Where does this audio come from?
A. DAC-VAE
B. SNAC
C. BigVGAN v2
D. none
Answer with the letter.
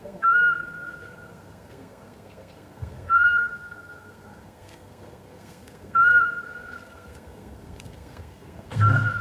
B